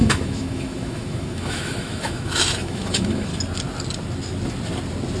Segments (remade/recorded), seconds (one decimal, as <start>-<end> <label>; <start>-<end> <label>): 0.0-3.3 remade; 3.3-5.2 recorded